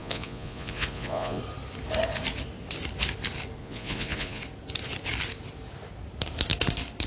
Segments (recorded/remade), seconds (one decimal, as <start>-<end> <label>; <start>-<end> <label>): 0.0-1.4 remade; 1.4-3.6 recorded; 3.6-4.4 remade; 4.4-7.1 recorded